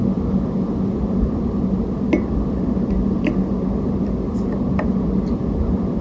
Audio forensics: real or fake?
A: real